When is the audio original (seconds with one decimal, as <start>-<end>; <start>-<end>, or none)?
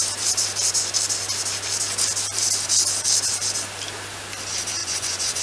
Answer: 0.0-4.8